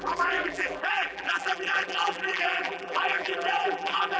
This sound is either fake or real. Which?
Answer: fake